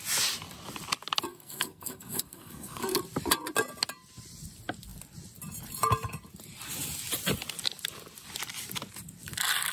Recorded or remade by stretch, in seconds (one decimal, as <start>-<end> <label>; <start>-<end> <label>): 0.0-1.3 recorded; 1.3-3.0 remade; 3.0-9.7 recorded